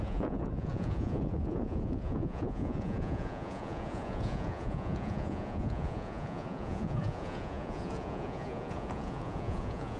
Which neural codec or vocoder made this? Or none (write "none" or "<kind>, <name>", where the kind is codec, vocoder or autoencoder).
vocoder, Vocos